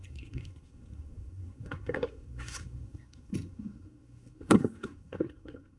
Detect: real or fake fake